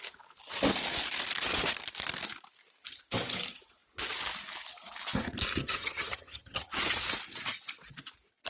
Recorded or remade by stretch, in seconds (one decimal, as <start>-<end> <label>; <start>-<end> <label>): 0.0-5.6 recorded; 5.6-6.7 remade; 6.7-8.5 recorded